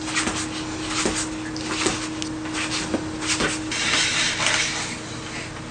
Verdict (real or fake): real